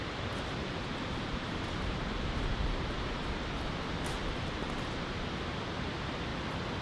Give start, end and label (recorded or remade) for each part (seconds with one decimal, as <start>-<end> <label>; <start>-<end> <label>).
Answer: 0.0-6.8 recorded

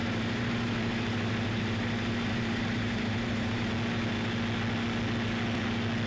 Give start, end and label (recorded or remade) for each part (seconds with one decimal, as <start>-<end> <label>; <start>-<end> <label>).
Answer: 0.0-3.7 remade; 3.7-6.1 recorded